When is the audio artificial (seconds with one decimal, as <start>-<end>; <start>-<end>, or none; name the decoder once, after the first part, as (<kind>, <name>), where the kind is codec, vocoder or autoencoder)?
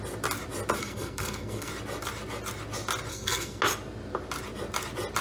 0.8-1.7 (codec, SNAC); 3.1-3.6